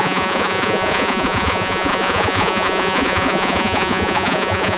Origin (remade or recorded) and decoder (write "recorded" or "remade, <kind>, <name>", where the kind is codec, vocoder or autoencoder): remade, vocoder, Vocos